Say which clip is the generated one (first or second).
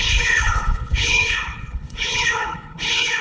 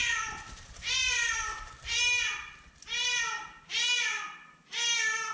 first